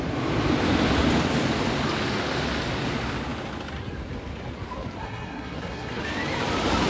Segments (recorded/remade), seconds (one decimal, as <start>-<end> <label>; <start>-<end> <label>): 0.0-5.0 recorded; 5.0-6.0 remade; 6.0-6.9 recorded